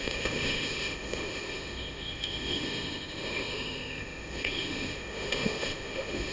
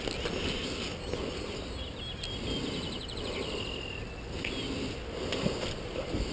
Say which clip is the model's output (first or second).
first